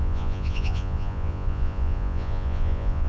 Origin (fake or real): fake